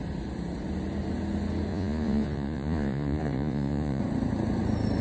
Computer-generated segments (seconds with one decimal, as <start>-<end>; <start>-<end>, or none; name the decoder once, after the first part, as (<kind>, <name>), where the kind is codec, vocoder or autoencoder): 1.7-4.0 (vocoder, Vocos)